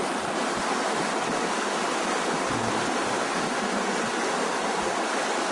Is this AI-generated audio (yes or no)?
no